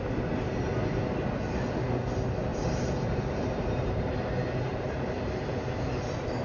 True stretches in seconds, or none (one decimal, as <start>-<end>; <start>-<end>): 0.0-2.5; 4.2-4.7; 5.9-6.4